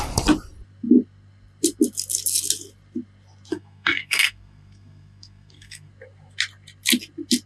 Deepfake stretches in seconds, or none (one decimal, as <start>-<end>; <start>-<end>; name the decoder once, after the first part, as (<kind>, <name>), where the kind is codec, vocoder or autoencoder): 3.5-5.9 (codec, SNAC)